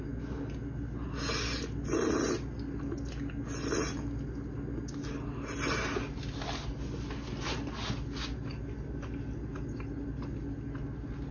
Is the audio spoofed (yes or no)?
no